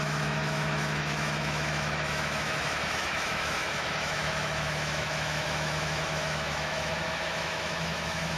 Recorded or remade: remade